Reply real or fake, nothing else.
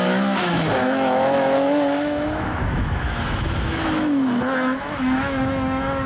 fake